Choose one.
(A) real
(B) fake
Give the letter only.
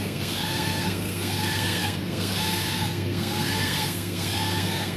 B